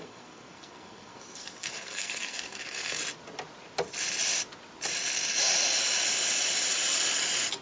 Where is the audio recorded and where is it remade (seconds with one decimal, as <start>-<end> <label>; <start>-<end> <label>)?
0.0-3.0 remade; 3.0-7.6 recorded